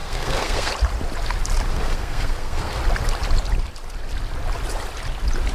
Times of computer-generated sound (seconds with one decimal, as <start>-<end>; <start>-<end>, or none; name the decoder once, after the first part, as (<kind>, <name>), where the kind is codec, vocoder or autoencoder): 0.0-0.7 (codec, SNAC); 1.7-2.8